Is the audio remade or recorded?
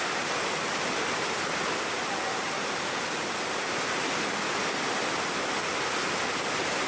recorded